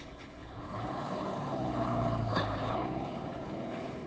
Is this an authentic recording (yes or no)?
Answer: no